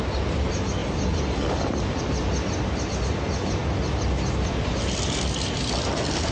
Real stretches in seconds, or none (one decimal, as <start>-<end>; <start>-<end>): 0.0-0.8; 2.0-6.3